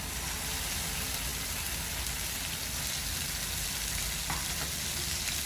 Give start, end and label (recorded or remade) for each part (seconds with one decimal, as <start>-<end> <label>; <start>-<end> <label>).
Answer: 0.0-5.5 recorded